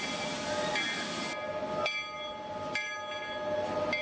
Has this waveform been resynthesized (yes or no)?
no